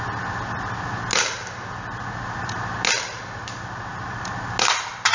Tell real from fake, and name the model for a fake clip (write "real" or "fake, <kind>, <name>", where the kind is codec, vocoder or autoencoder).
real